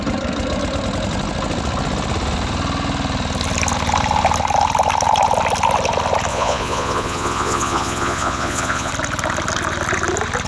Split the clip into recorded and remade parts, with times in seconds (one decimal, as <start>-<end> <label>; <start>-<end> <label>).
0.0-6.3 recorded; 6.3-8.9 remade; 8.9-10.5 recorded